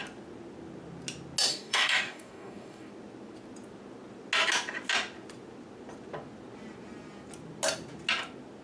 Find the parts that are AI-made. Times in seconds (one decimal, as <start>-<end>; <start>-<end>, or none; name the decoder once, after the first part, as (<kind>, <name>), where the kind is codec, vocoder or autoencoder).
1.5-2.9 (codec, DAC)